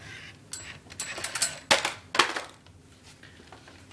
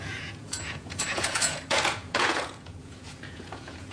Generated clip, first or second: second